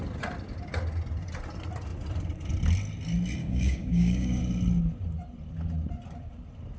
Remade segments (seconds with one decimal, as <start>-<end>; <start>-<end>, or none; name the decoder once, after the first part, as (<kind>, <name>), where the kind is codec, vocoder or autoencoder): 3.4-4.4 (codec, DAC)